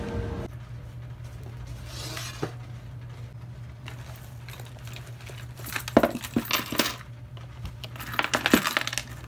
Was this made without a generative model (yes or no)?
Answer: yes